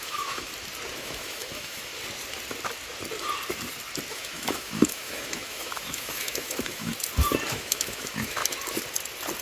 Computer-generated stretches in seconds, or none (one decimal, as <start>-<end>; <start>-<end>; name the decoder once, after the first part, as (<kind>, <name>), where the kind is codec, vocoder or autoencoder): 0.0-0.5 (autoencoder, DAC-VAE); 1.0-1.9; 4.1-6.9; 7.5-8.4